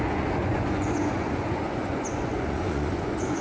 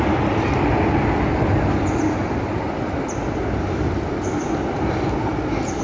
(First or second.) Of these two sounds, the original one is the second